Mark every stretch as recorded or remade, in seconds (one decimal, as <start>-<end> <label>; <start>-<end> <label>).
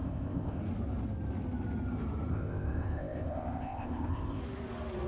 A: 0.0-0.6 remade; 0.6-2.3 recorded; 2.3-4.4 remade; 4.4-5.1 recorded